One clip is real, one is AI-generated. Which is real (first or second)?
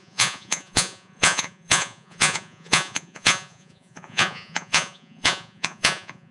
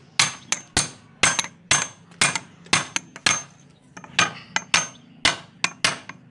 second